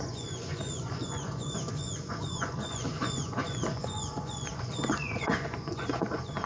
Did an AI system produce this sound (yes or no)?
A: yes